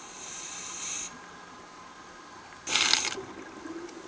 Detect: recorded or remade recorded